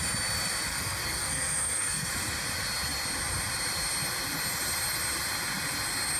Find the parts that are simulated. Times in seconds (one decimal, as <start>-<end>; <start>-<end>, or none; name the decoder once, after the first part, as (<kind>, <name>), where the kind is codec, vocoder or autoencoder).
0.7-2.1 (codec, SNAC)